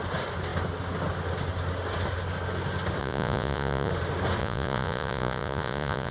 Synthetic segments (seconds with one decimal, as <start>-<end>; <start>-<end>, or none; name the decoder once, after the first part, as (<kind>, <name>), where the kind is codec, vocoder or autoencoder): 3.0-3.9 (vocoder, Vocos); 4.4-6.1